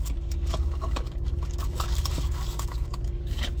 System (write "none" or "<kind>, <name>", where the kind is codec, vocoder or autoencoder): codec, DAC